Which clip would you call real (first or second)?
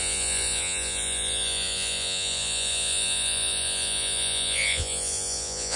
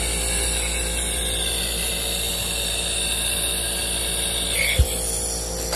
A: second